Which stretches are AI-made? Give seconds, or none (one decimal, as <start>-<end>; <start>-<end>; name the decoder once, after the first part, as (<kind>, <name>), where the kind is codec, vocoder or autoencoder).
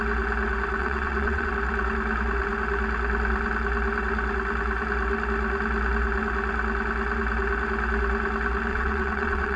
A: 0.8-1.5 (vocoder, WaveNeXt); 8.7-9.6